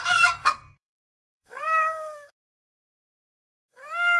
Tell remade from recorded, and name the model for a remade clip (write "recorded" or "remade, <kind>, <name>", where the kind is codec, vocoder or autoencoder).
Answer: remade, codec, SNAC